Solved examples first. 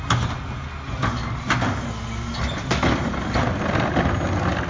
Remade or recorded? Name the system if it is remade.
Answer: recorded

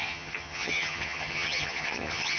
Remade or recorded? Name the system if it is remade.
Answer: remade, vocoder, HiFi-GAN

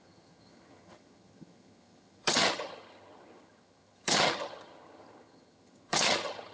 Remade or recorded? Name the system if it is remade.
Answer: remade, vocoder, HiFi-GAN